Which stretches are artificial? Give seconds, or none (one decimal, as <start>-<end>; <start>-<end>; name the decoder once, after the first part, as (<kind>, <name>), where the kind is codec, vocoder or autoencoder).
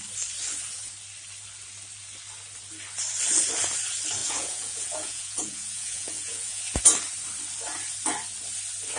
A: 4.2-6.6 (vocoder, Vocos)